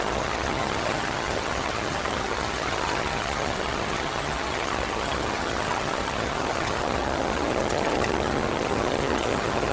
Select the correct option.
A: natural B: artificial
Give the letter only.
B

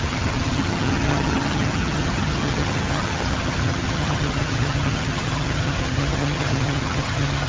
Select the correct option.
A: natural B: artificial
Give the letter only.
B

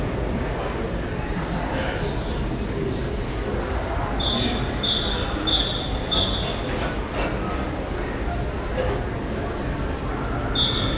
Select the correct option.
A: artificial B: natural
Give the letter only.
B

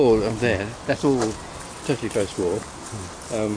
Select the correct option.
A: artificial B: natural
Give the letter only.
B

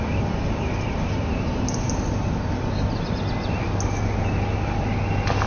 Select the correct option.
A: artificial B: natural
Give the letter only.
B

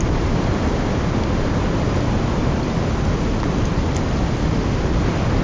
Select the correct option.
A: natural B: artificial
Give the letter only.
A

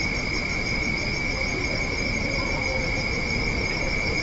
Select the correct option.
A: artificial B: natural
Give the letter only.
A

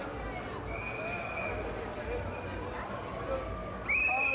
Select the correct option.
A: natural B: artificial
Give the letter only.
A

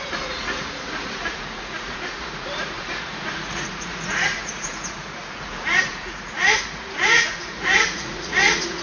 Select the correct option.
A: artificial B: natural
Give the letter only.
A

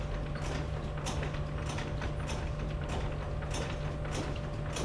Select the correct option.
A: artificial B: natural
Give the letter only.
B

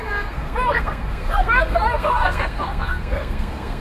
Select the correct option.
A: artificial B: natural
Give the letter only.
A